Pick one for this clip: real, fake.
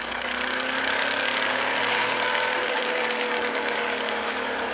fake